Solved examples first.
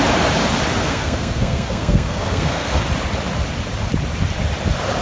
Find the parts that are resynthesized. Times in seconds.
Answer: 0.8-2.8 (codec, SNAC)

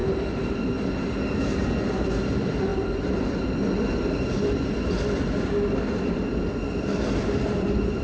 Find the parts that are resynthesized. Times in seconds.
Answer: none

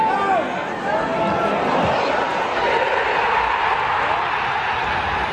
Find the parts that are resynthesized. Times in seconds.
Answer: none

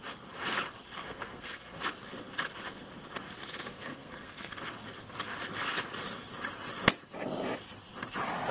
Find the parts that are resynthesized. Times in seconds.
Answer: 1.0-1.8 (codec, SNAC); 3.7-4.6